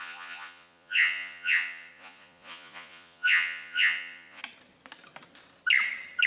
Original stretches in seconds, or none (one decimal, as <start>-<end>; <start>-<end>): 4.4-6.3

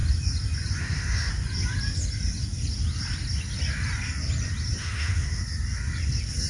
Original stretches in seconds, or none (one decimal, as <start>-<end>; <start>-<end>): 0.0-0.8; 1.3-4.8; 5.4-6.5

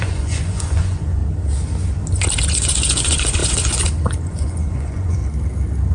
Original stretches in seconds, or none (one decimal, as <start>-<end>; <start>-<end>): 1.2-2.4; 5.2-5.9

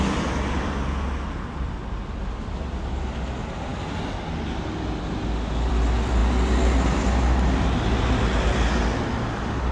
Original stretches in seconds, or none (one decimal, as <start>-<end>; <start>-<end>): 0.0-9.7

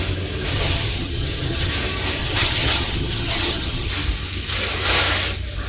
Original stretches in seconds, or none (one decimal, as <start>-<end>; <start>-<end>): 0.0-0.5; 1.7-2.2; 3.9-5.7

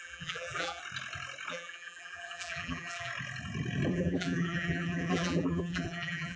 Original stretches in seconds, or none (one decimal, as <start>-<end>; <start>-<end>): 0.8-1.5; 3.1-3.9

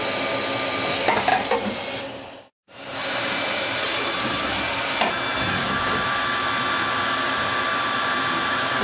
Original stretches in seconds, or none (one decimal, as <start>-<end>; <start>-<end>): 0.0-1.3; 5.0-8.8

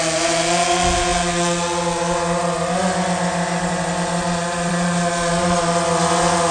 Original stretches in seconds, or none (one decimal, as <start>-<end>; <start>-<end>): 0.0-6.5